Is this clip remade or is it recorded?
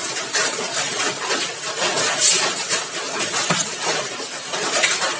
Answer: recorded